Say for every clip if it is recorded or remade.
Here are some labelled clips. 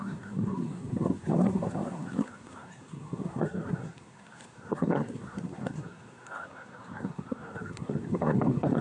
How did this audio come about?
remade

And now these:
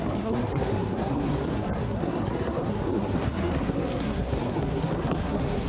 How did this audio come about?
remade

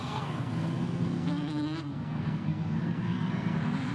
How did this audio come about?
remade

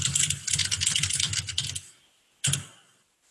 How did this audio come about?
recorded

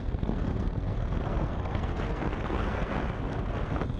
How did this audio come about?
remade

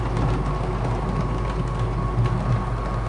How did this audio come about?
recorded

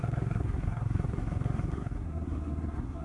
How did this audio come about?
remade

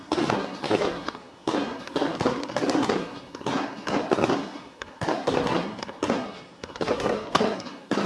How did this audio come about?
remade